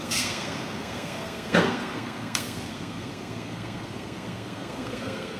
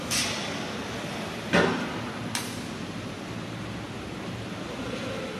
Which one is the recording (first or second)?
second